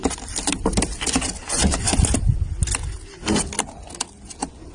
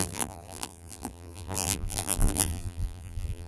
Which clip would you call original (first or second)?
first